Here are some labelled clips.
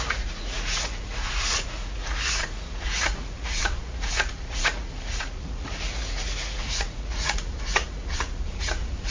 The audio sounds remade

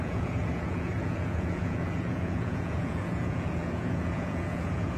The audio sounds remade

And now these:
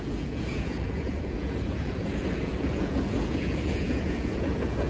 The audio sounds remade